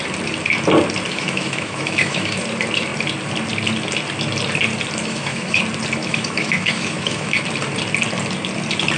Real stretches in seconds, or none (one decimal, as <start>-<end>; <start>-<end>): 0.0-1.1; 2.4-5.0; 5.6-6.0; 7.4-9.0